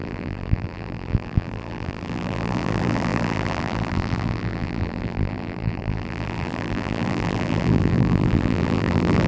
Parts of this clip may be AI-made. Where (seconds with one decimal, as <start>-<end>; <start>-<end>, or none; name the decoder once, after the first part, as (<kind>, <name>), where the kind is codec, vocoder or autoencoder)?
0.0-9.3 (vocoder, BigVGAN v2)